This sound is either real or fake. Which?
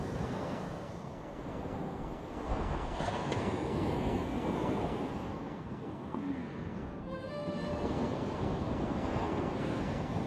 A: fake